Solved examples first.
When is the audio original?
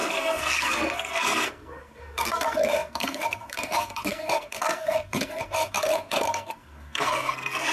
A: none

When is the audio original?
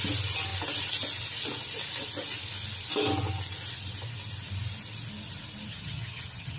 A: 0.0-5.7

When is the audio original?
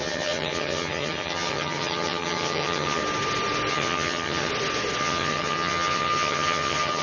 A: 3.0-3.7; 4.5-5.0